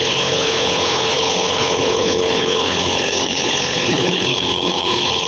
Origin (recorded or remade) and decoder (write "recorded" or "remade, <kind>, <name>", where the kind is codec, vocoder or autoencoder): remade, codec, HILCodec